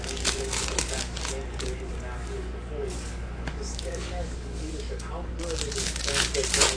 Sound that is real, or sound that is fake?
fake